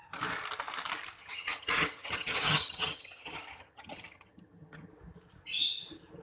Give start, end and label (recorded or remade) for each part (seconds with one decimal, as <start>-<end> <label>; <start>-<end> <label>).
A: 0.0-1.2 recorded; 1.2-4.9 remade; 4.9-6.2 recorded